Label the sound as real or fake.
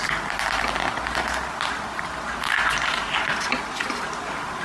real